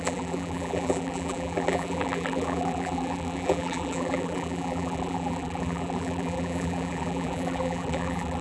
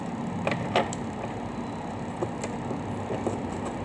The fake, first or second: first